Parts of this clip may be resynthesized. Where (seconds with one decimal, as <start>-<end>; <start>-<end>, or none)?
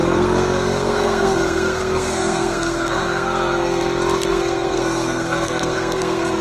0.0-3.8; 4.3-6.4